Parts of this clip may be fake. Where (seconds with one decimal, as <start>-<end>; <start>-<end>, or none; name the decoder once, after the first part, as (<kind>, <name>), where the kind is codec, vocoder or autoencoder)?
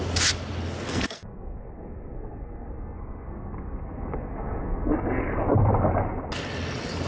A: 0.9-5.2 (codec, SNAC)